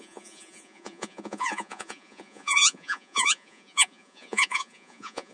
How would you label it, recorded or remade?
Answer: remade